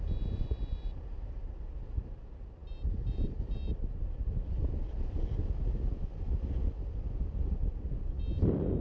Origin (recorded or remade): recorded